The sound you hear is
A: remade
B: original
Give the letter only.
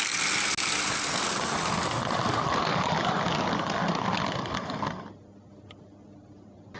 B